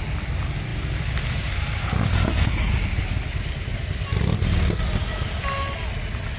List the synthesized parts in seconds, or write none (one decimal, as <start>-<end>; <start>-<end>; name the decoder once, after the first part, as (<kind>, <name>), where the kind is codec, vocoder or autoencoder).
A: none